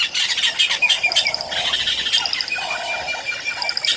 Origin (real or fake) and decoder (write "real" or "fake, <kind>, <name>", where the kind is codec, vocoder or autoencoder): real